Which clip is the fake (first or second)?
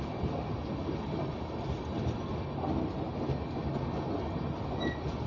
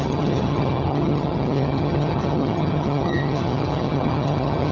second